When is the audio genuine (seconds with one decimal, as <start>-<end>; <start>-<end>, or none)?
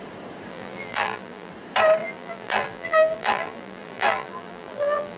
0.0-0.5; 1.5-2.0